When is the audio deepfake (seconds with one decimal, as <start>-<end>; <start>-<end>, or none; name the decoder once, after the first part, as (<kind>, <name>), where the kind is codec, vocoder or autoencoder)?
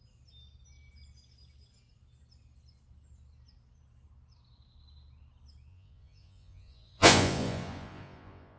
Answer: 5.7-8.6 (vocoder, Vocos)